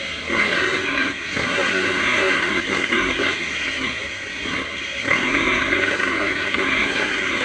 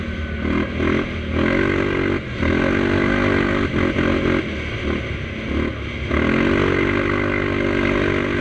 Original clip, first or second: second